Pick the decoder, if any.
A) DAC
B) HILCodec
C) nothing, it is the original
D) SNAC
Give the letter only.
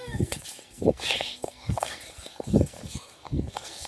D